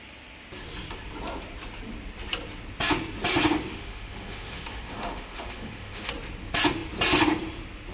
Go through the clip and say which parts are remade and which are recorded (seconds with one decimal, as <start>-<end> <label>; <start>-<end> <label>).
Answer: 0.0-3.7 recorded; 3.7-6.1 remade; 6.1-7.9 recorded